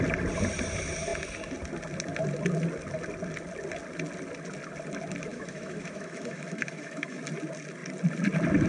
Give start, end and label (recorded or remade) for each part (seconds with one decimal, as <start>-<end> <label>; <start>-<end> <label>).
0.0-5.3 recorded; 5.3-7.2 remade; 7.2-8.7 recorded

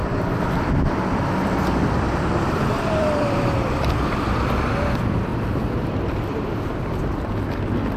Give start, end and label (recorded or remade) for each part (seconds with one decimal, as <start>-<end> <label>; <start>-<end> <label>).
0.0-8.0 remade

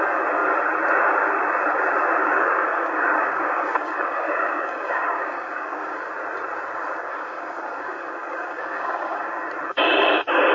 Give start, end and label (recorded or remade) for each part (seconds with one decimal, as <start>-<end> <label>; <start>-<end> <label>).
0.0-2.2 recorded; 2.2-6.1 remade; 6.1-7.1 recorded; 7.1-9.4 remade; 9.4-10.5 recorded